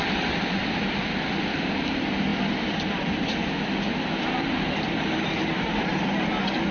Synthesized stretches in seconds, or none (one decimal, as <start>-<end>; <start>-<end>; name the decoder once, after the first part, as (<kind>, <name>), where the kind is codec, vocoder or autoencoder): 0.0-6.7 (vocoder, BigVGAN v2)